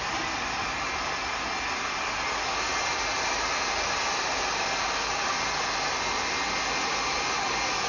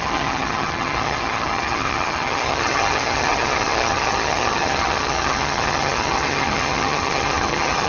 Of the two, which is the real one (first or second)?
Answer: first